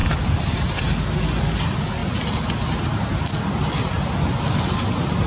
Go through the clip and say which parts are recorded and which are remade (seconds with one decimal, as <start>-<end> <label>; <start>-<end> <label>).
0.0-5.3 recorded